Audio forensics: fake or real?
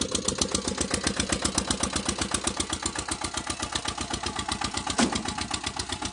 real